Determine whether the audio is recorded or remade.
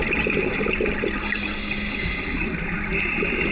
recorded